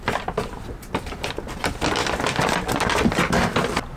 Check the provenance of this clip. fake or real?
real